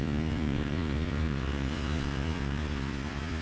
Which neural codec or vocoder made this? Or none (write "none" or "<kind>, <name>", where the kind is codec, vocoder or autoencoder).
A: vocoder, Vocos